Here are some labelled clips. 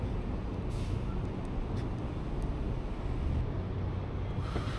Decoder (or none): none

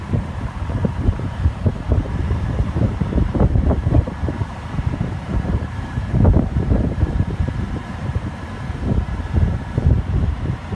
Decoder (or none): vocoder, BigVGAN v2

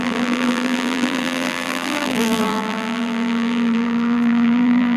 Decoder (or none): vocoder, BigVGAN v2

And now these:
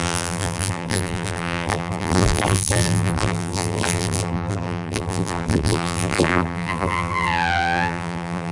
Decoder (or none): vocoder, BigVGAN v2